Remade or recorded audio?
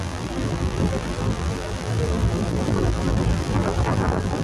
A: remade